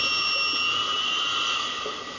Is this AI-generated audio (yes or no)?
no